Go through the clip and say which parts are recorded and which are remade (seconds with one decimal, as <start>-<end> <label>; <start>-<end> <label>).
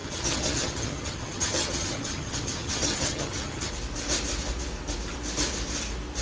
0.0-3.7 remade; 3.7-6.2 recorded